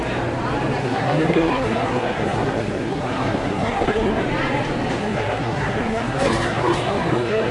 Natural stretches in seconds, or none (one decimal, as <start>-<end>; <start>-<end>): 0.0-0.8; 4.2-5.0